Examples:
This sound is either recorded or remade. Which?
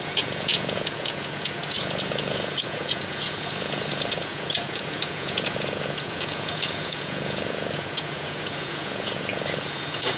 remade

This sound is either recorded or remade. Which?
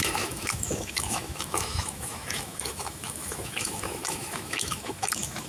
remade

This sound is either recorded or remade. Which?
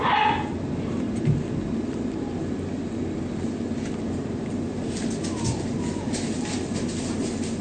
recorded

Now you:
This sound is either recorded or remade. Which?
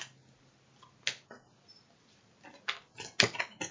recorded